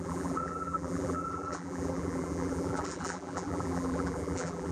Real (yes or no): no